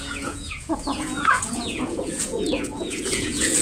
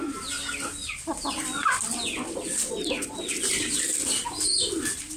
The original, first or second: second